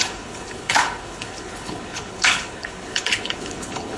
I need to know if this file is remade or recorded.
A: remade